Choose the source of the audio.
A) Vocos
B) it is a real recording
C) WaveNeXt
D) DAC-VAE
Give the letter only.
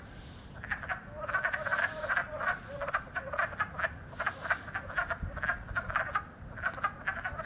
B